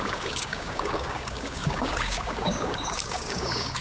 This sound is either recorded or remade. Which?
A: remade